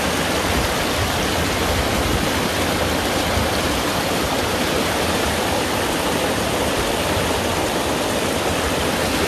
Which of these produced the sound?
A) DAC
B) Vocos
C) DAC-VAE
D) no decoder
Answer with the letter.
D